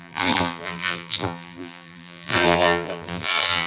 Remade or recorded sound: remade